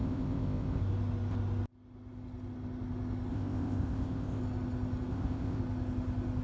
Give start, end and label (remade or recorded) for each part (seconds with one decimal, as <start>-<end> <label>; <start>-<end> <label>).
0.0-0.8 remade; 0.8-3.3 recorded; 3.3-4.4 remade; 4.4-5.1 recorded; 5.1-5.6 remade; 5.6-6.4 recorded